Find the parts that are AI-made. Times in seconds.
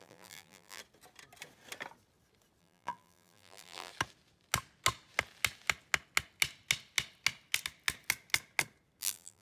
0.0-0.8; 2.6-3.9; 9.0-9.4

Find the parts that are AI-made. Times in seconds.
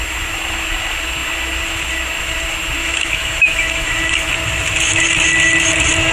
2.8-4.3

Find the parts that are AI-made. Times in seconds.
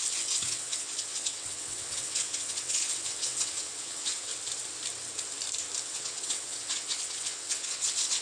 0.0-4.3; 5.8-8.2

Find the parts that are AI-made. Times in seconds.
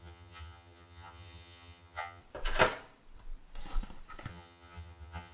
0.0-2.2; 4.3-5.3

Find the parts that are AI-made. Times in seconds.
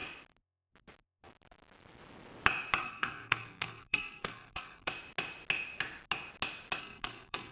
2.8-4.9; 6.8-7.5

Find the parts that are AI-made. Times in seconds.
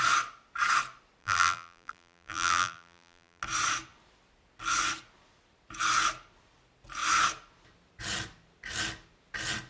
1.2-3.4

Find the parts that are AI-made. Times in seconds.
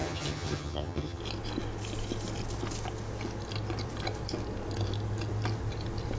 0.0-1.2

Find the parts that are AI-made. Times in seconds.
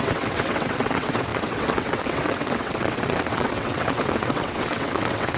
0.0-5.4